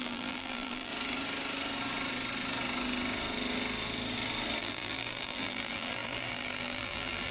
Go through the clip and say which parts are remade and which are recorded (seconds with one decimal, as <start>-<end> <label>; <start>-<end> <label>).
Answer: 0.0-0.9 remade; 0.9-4.6 recorded; 4.6-7.3 remade